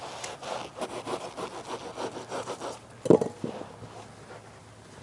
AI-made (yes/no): no